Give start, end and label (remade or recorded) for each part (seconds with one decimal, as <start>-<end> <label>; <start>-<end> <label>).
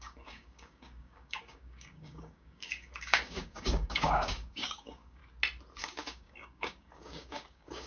0.0-5.2 remade; 5.2-5.8 recorded; 5.8-7.9 remade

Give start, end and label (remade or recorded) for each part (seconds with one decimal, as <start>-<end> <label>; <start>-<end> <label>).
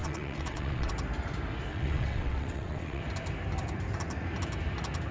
0.0-0.9 remade; 0.9-1.7 recorded; 1.7-3.0 remade; 3.0-5.1 recorded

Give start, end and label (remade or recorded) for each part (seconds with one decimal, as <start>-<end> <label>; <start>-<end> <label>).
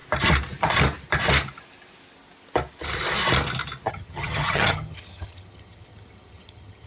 0.0-3.9 recorded; 3.9-6.9 remade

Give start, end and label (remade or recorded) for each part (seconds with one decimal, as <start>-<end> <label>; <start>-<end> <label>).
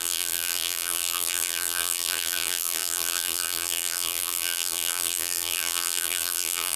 0.0-6.8 remade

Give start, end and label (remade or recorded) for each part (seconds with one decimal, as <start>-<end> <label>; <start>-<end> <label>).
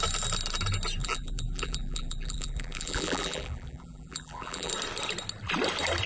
0.0-1.0 recorded; 1.0-4.7 remade; 4.7-6.1 recorded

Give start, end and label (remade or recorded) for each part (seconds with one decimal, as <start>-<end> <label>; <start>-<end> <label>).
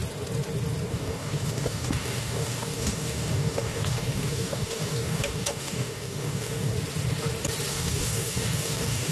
0.0-0.9 recorded; 0.9-6.7 remade; 6.7-7.7 recorded; 7.7-9.1 remade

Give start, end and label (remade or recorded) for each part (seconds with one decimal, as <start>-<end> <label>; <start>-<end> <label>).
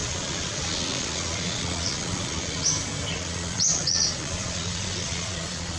0.0-2.7 remade; 2.7-3.1 recorded; 3.1-5.8 remade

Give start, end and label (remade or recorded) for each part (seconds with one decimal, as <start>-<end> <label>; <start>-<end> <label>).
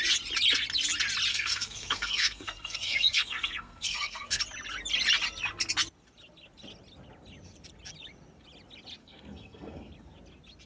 0.0-1.3 recorded; 1.3-4.4 remade; 4.4-9.0 recorded; 9.0-9.9 remade; 9.9-10.7 recorded